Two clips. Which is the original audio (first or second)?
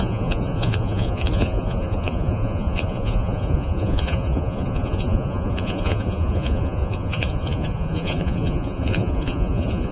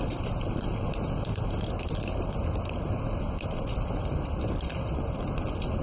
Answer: second